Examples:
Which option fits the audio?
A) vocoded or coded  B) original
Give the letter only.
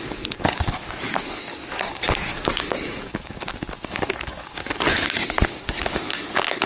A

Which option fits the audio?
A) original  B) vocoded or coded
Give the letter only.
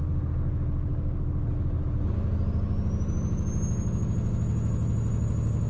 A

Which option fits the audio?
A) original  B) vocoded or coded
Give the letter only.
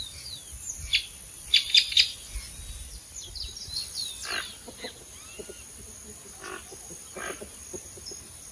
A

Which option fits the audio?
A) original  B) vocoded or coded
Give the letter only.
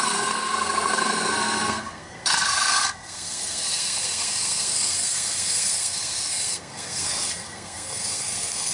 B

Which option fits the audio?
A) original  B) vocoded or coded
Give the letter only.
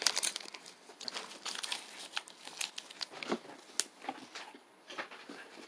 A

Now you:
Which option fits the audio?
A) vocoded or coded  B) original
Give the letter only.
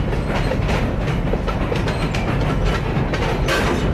B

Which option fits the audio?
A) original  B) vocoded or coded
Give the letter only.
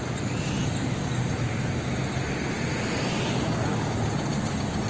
A